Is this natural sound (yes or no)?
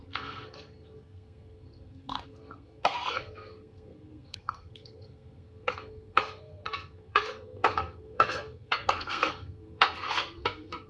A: no